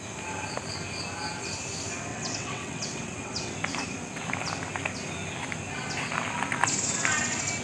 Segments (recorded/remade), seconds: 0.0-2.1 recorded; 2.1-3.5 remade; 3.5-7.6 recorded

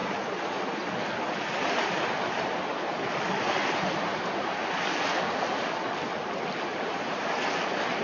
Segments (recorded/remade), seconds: 0.0-0.6 remade; 0.6-4.1 recorded; 4.1-4.6 remade; 4.6-6.7 recorded; 6.7-7.4 remade; 7.4-8.0 recorded